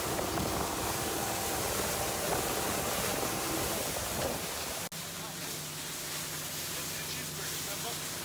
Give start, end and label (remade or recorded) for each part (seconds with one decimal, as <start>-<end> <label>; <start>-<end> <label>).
0.0-3.1 recorded; 3.1-4.3 remade; 4.3-8.2 recorded